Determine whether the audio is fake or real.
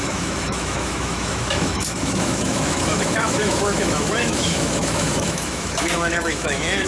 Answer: fake